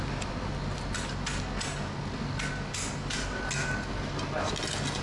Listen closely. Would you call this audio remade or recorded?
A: recorded